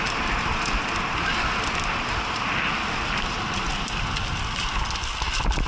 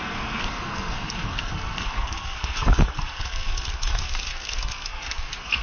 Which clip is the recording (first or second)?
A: first